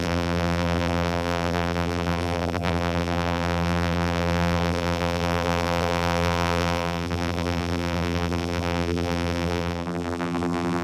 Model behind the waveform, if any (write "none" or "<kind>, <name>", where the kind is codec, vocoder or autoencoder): vocoder, BigVGAN v2